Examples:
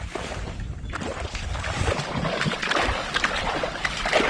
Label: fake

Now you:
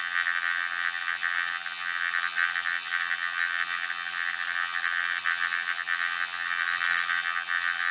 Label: fake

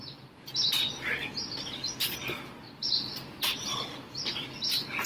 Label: real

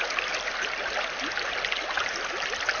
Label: real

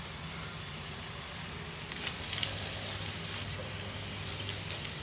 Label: real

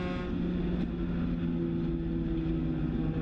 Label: real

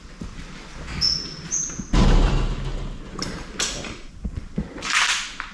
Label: real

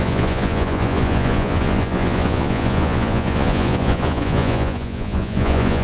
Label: fake